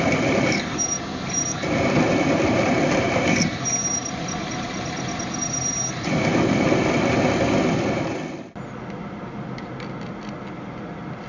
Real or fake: real